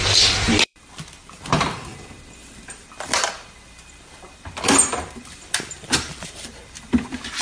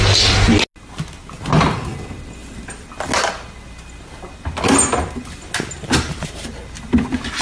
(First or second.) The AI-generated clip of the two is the first